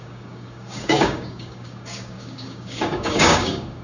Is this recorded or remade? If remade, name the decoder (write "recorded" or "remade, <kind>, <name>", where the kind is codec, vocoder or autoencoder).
remade, codec, DAC